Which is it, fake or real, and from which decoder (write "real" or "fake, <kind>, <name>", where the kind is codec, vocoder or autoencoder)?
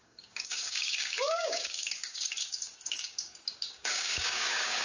fake, codec, DAC